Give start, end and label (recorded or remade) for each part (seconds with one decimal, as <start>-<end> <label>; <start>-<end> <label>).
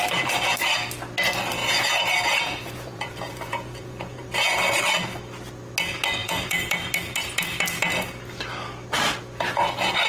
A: 0.0-1.6 recorded; 1.6-4.8 remade; 4.8-6.2 recorded; 6.2-6.7 remade; 6.7-10.1 recorded